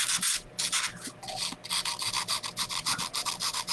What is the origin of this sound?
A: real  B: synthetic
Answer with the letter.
A